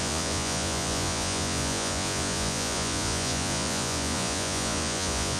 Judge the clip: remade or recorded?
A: remade